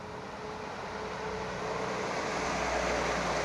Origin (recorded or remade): recorded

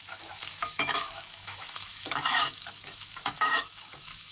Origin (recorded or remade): remade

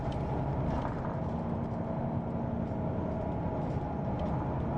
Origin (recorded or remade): recorded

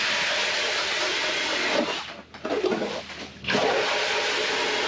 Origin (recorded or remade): recorded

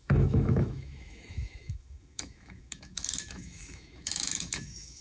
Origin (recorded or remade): remade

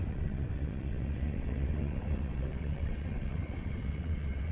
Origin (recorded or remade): remade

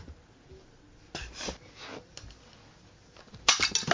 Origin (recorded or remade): recorded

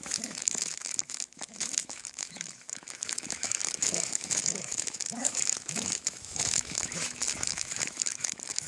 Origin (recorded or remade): remade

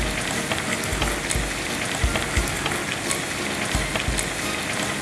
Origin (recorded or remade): recorded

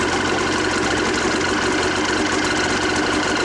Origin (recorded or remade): recorded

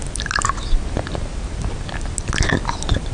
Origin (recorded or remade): recorded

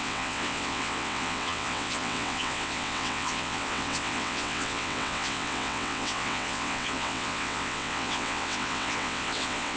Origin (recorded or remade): remade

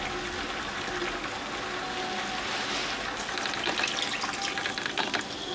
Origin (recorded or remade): recorded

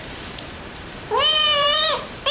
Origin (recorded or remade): remade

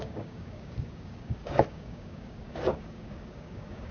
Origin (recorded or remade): remade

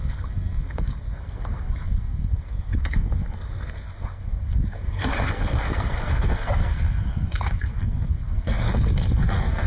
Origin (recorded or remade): remade